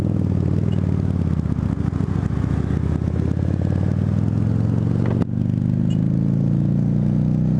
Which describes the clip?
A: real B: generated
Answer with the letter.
A